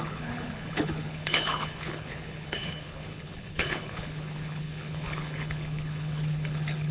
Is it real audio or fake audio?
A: fake